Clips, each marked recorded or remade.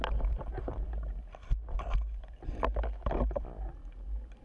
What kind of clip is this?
recorded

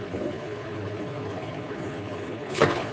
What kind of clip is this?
remade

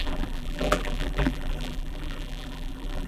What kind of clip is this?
remade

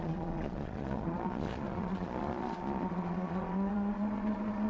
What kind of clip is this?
remade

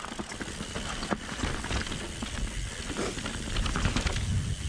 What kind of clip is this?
recorded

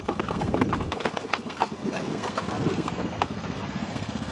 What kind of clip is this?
remade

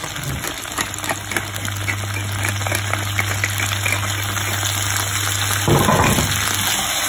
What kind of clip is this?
recorded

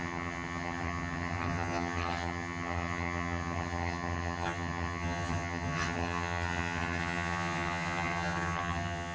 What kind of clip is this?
remade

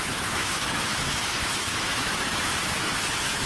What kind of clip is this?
remade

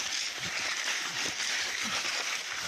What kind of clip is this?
remade